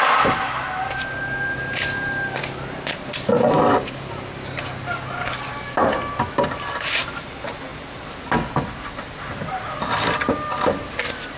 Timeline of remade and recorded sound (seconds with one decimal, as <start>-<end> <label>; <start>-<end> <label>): 0.0-11.4 recorded